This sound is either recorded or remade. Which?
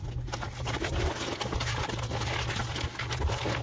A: recorded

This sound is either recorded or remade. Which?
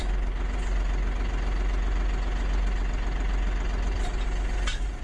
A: recorded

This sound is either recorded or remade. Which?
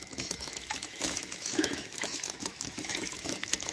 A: remade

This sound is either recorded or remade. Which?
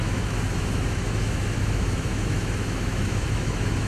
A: remade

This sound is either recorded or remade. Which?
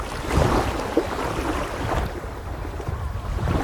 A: recorded